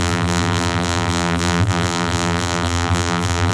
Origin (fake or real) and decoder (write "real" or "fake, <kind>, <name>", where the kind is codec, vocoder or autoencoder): fake, vocoder, BigVGAN v2